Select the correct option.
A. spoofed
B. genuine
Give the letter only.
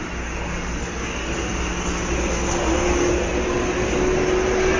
B